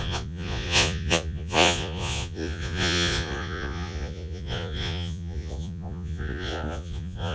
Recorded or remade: remade